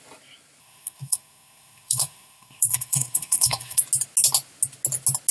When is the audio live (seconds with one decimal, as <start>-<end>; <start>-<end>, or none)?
0.0-0.6; 3.8-5.3